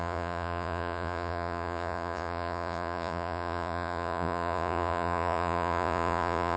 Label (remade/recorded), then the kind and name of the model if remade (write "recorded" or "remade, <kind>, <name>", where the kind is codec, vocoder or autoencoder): remade, vocoder, Vocos